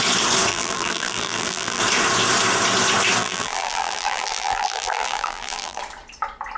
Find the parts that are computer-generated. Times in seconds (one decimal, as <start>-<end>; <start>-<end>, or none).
0.5-1.8; 3.2-5.8